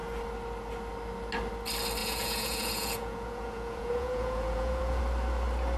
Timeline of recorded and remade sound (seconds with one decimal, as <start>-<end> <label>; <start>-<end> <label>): 0.0-2.0 recorded; 2.0-5.0 remade; 5.0-5.8 recorded